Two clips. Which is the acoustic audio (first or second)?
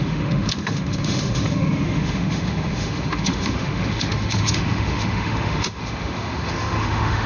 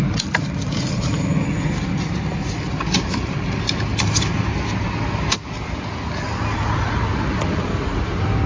second